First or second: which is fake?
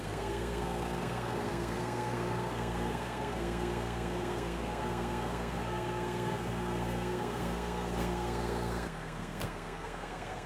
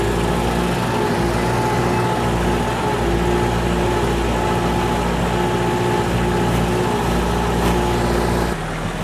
first